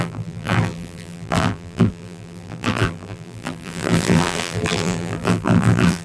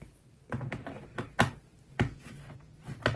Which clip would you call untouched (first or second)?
second